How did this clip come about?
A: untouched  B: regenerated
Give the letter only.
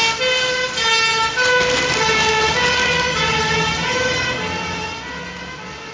A